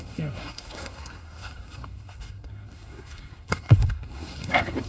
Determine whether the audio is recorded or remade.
remade